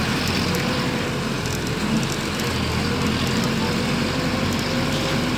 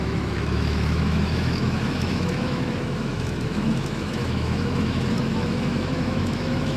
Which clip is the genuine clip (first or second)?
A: first